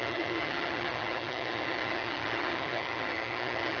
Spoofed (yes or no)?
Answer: yes